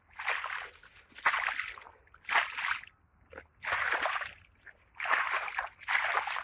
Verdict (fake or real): real